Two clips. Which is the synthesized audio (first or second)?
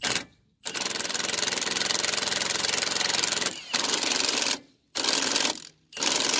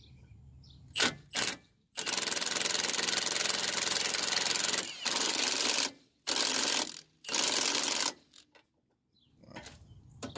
first